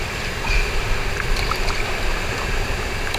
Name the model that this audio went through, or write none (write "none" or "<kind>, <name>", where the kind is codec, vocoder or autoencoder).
none